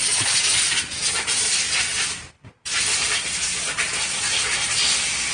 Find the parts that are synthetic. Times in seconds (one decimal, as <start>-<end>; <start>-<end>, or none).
none